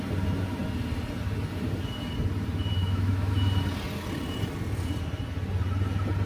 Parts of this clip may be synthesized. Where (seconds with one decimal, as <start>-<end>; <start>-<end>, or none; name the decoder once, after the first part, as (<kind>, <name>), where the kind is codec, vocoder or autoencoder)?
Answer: 2.8-3.3 (autoencoder, DAC-VAE)